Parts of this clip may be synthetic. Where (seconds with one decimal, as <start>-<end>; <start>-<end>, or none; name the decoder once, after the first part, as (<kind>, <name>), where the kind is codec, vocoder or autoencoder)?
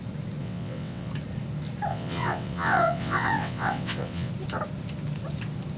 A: 0.4-1.1 (vocoder, WaveNeXt); 1.9-4.3